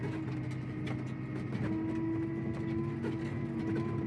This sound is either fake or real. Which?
real